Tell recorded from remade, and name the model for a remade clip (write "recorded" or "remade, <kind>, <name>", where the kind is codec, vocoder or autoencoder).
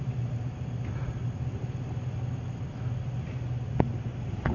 recorded